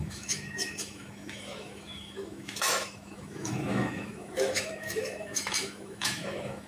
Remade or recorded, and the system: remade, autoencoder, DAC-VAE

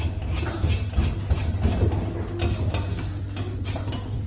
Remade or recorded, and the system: recorded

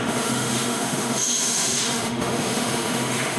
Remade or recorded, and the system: remade, autoencoder, DAC-VAE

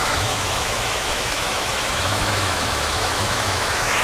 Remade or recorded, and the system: remade, autoencoder, DAC-VAE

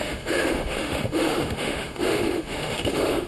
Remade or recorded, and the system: remade, autoencoder, DAC-VAE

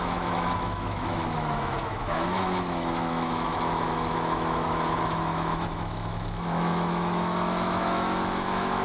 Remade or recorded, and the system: remade, autoencoder, DAC-VAE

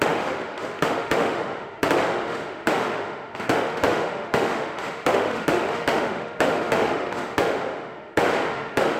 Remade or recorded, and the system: remade, autoencoder, DAC-VAE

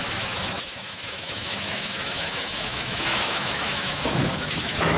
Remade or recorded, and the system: remade, autoencoder, DAC-VAE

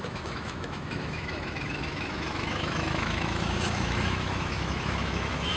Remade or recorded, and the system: remade, autoencoder, DAC-VAE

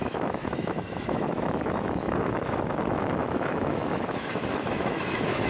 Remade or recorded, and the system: remade, autoencoder, DAC-VAE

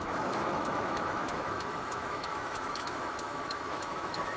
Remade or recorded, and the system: remade, autoencoder, DAC-VAE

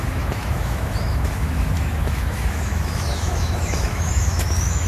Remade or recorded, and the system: remade, autoencoder, DAC-VAE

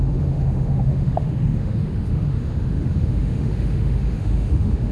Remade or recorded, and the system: remade, autoencoder, DAC-VAE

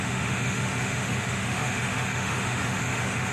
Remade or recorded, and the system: remade, autoencoder, DAC-VAE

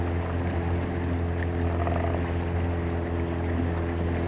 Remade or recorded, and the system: recorded